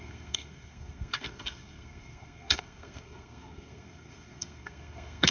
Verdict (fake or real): fake